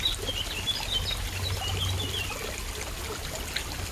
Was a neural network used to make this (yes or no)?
no